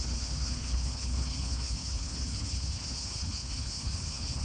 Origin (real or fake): fake